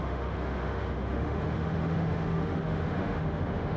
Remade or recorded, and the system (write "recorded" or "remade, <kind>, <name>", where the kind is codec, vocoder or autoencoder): remade, autoencoder, DAC-VAE